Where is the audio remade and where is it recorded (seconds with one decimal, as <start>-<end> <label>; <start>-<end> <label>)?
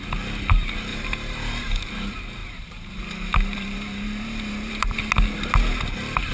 0.0-0.9 recorded; 0.9-1.9 remade; 1.9-2.4 recorded; 2.4-5.0 remade; 5.0-6.3 recorded